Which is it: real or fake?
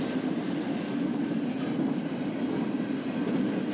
real